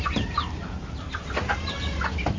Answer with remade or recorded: recorded